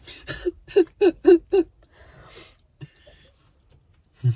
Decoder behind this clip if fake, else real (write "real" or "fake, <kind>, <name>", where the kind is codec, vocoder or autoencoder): real